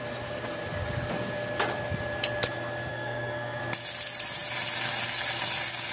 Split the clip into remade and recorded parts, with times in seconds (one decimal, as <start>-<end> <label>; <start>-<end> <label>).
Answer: 0.0-2.9 recorded; 2.9-3.6 remade; 3.6-5.9 recorded